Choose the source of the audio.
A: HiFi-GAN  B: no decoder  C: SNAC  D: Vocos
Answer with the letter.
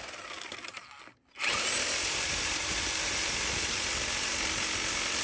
B